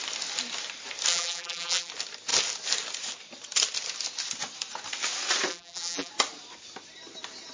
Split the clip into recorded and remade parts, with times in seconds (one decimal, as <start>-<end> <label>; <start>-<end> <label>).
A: 0.0-1.1 recorded; 1.1-1.9 remade; 1.9-5.5 recorded; 5.5-6.1 remade; 6.1-7.5 recorded